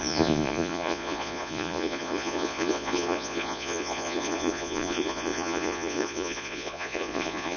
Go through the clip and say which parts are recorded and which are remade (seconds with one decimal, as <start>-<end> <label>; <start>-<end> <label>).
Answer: 0.0-7.6 remade